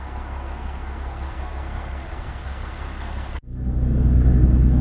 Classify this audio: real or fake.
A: fake